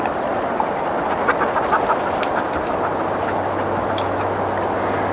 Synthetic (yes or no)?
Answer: no